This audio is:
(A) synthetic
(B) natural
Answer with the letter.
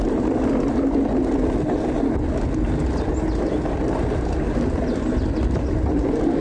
B